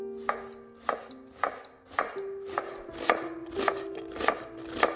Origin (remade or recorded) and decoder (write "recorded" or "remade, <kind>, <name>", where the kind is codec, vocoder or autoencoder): recorded